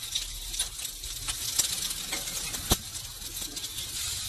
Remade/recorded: recorded